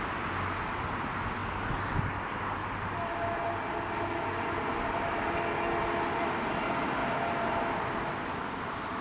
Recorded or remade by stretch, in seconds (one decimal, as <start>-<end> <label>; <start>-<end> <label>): 0.0-9.0 recorded

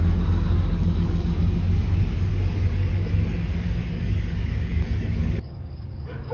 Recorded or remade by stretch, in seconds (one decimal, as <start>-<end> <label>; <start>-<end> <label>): 0.0-6.3 remade